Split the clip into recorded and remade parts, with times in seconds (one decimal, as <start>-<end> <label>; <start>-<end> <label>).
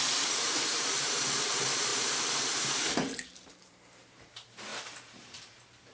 0.0-5.9 remade